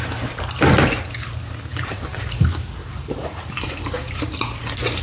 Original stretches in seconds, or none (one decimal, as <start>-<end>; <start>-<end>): 0.0-1.7; 2.4-2.8; 4.2-5.0